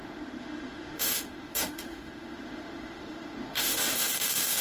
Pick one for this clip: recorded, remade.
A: remade